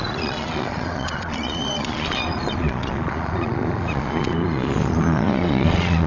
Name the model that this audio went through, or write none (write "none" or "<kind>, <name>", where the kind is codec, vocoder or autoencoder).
vocoder, Vocos